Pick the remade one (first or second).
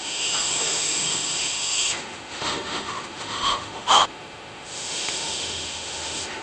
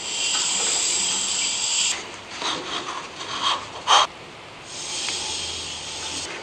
first